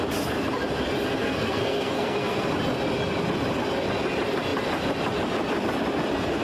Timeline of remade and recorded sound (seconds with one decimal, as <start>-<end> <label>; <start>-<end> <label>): 0.0-1.2 recorded; 1.2-2.5 remade; 2.5-6.4 recorded